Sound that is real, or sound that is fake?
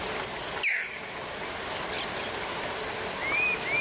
real